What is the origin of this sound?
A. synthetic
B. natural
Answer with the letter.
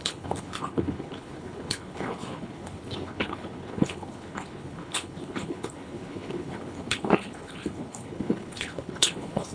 A